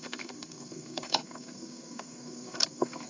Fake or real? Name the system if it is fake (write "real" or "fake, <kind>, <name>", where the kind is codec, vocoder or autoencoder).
fake, codec, SNAC